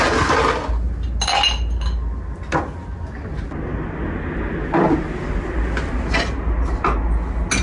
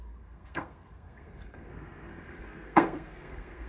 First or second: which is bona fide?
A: first